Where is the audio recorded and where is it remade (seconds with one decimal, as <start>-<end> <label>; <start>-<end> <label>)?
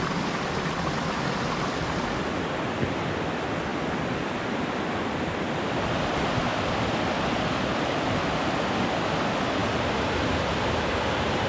0.0-11.5 recorded